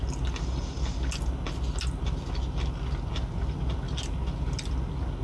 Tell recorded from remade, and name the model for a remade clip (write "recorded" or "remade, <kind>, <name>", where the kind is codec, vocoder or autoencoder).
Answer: recorded